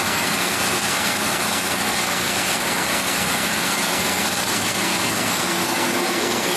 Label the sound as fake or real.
fake